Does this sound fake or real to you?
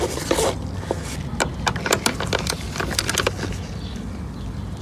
real